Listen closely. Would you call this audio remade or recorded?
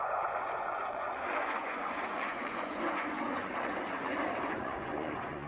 remade